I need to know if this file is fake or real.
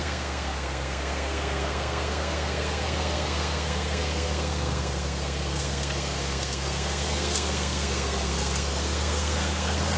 fake